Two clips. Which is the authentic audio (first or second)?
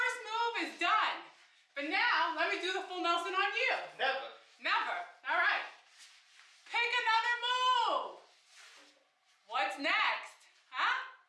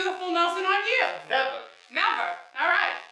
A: first